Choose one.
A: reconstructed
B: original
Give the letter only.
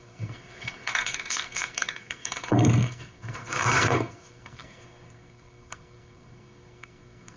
A